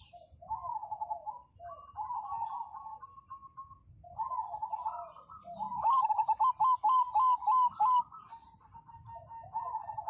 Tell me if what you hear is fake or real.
real